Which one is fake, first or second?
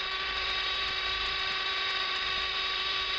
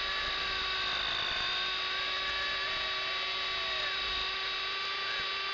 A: first